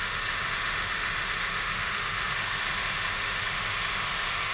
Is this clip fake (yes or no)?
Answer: yes